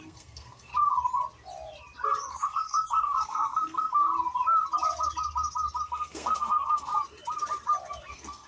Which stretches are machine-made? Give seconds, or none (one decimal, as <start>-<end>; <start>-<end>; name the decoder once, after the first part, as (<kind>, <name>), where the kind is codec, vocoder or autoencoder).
0.0-0.7 (codec, SNAC); 2.3-4.1; 5.8-6.9; 8.1-8.5